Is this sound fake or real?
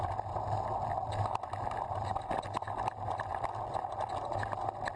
real